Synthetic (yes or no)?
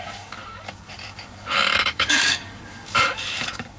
yes